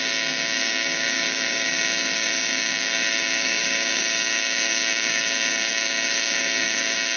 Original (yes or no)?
no